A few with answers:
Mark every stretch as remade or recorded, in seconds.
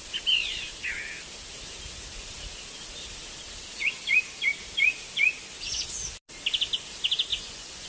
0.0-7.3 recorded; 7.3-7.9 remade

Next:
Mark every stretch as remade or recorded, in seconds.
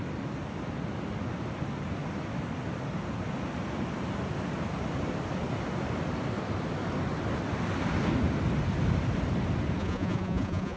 0.0-9.8 recorded; 9.8-10.8 remade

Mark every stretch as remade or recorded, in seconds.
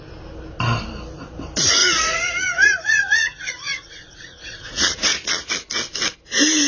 0.0-1.8 recorded; 1.8-5.5 remade; 5.5-6.7 recorded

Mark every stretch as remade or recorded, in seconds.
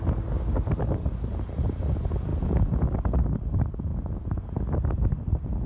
0.0-2.3 recorded; 2.3-2.9 remade; 2.9-3.9 recorded; 3.9-4.7 remade; 4.7-5.7 recorded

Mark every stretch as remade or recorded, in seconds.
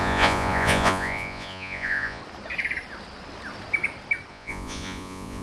0.0-2.2 remade; 2.2-4.3 recorded; 4.3-5.4 remade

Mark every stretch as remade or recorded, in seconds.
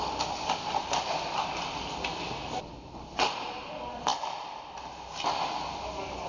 0.0-6.3 recorded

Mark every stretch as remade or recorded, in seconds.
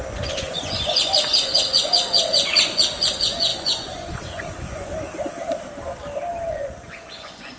0.0-4.9 remade; 4.9-6.5 recorded; 6.5-7.6 remade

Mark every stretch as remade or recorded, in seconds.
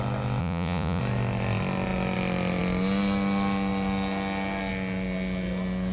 0.0-0.4 recorded; 0.4-1.0 remade; 1.0-5.9 recorded